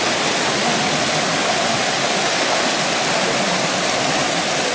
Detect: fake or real real